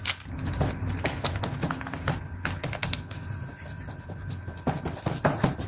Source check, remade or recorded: recorded